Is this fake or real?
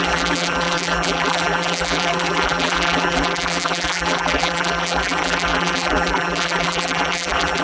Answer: fake